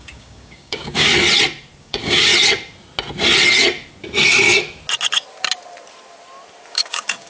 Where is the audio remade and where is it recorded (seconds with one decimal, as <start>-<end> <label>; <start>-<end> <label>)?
0.0-1.1 remade; 1.1-1.8 recorded; 1.8-2.3 remade; 2.3-6.7 recorded; 6.7-7.3 remade